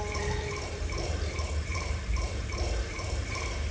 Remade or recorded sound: remade